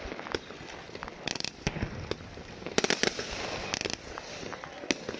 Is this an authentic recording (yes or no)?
yes